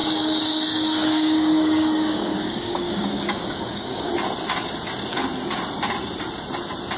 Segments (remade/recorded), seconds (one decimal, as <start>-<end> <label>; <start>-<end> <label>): 0.0-4.1 remade; 4.1-7.0 recorded